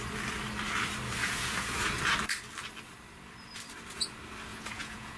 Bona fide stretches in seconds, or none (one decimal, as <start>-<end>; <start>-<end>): 0.0-1.2; 2.0-4.5